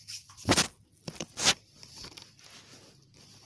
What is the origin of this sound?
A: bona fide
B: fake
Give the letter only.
A